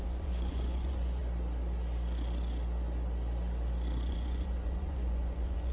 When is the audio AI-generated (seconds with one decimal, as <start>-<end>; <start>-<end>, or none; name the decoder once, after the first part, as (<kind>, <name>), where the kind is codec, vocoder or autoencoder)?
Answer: 0.0-1.2 (vocoder, Vocos); 4.1-5.7